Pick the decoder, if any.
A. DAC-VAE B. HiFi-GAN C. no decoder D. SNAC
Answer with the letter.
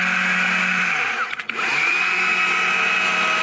C